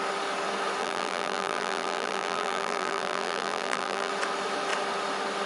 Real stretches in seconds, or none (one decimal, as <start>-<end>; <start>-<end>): 0.0-0.8; 4.1-5.5